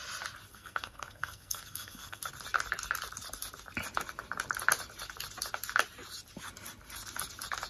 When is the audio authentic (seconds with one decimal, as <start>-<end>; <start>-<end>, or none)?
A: 0.0-0.5; 2.2-7.7